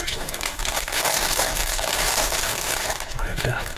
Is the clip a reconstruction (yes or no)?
yes